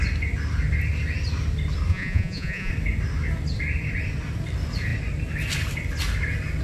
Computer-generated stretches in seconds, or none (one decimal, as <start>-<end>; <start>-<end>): 1.9-2.7